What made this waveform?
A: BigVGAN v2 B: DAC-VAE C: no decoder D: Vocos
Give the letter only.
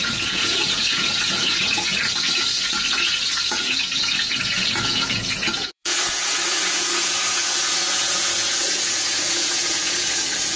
D